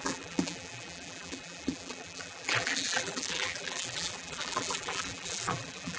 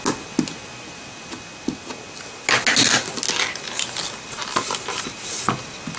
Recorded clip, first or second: second